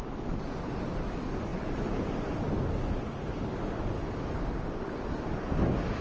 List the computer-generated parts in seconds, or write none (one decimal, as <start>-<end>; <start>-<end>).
none

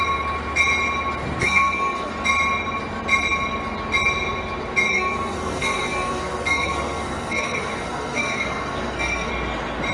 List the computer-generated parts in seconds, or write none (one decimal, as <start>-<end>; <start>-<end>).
1.4-2.1; 4.9-9.3

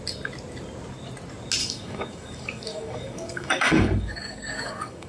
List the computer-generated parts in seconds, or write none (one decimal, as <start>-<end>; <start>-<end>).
1.6-5.1

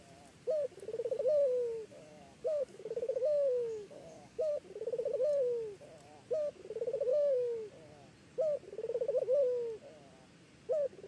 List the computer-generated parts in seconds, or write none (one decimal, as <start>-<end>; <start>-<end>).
1.9-4.5; 7.1-7.7